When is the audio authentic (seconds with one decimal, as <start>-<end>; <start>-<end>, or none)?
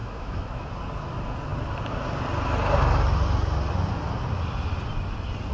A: 0.7-5.5